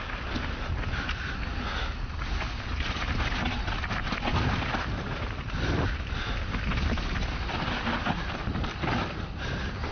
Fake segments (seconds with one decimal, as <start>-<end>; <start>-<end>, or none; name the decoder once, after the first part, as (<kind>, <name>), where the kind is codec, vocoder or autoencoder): none